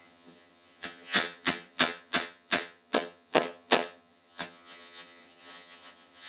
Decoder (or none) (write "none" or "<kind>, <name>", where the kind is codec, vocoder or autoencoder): vocoder, HiFi-GAN